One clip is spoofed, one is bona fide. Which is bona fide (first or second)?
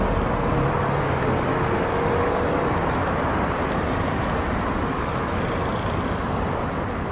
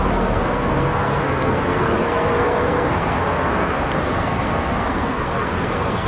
first